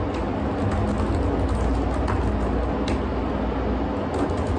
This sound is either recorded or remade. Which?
recorded